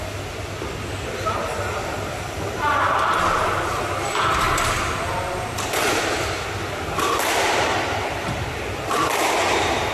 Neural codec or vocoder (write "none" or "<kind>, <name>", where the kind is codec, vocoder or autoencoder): none